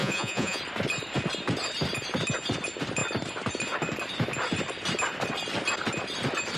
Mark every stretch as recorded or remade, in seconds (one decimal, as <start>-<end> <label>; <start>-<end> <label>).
0.0-0.6 remade; 0.6-6.6 recorded